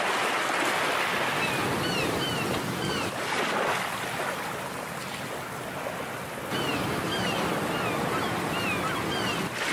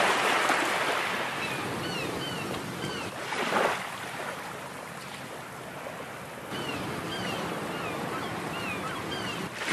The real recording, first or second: first